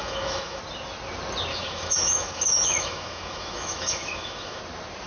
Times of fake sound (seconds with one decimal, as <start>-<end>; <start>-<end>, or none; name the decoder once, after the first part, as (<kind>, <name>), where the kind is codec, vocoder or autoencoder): 0.0-0.6 (autoencoder, DAC-VAE); 1.5-4.6